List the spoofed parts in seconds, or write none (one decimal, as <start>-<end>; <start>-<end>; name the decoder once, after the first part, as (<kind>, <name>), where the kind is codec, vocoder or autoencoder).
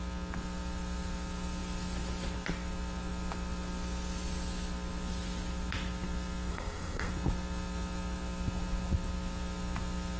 6.5-7.1 (codec, SNAC)